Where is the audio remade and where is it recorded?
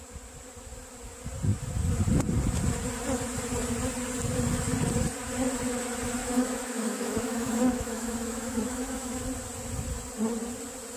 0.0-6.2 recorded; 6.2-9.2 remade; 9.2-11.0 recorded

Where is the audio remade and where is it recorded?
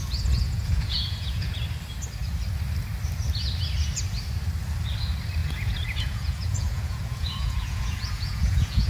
0.0-1.6 remade; 1.6-5.4 recorded; 5.4-8.9 remade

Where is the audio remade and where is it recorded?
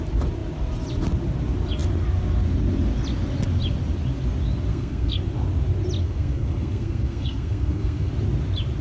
0.0-4.7 recorded; 4.7-5.2 remade; 5.2-6.0 recorded; 6.0-8.1 remade; 8.1-8.8 recorded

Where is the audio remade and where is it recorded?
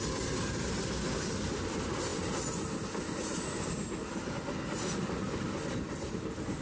0.0-6.6 recorded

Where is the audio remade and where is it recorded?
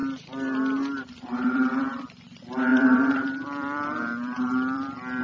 0.0-1.1 recorded; 1.1-5.2 remade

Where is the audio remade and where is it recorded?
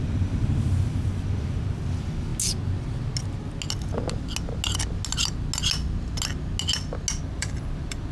0.0-2.3 remade; 2.3-7.2 recorded; 7.2-8.1 remade